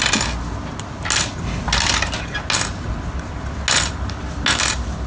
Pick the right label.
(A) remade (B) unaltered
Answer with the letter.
B